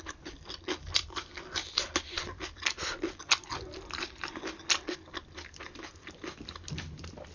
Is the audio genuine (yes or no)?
yes